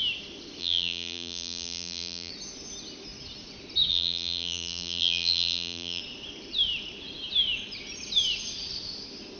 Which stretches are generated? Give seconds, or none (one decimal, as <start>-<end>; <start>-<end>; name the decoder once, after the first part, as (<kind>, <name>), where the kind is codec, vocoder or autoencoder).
0.6-2.3 (vocoder, BigVGAN v2); 3.9-6.0